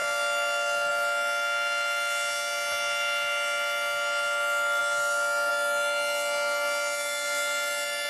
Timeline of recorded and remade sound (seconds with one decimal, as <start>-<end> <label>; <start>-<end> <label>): 0.0-8.1 recorded